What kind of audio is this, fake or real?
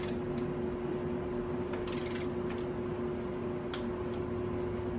real